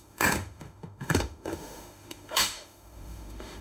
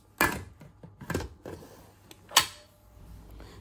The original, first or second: second